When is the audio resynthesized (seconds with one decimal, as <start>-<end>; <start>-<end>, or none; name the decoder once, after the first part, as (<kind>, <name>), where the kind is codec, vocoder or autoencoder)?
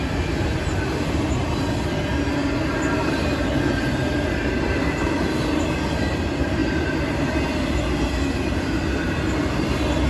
none